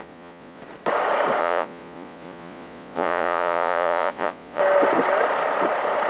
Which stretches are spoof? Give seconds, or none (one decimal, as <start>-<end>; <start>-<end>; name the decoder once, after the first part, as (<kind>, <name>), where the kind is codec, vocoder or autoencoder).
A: 0.0-0.6 (vocoder, Vocos); 1.4-4.6